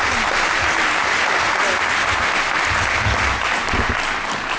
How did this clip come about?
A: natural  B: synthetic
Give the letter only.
A